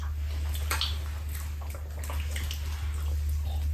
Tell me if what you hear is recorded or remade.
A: recorded